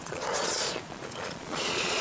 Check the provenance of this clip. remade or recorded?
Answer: remade